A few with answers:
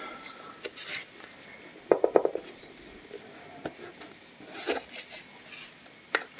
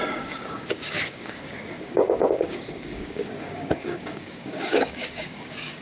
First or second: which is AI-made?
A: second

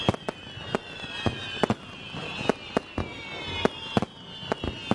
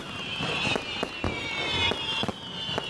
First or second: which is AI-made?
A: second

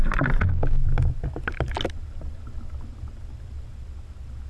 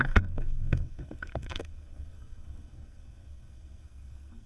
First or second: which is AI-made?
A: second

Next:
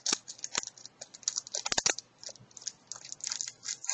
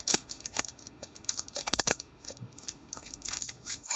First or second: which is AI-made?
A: second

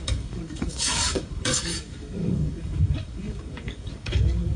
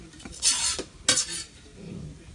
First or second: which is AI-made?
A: first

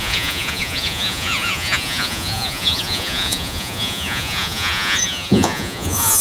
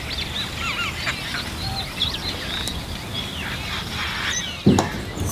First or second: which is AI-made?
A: first